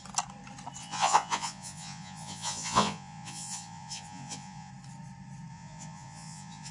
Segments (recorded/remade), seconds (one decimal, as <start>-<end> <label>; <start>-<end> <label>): 0.0-0.8 recorded; 0.8-4.7 remade; 4.7-5.5 recorded; 5.5-6.7 remade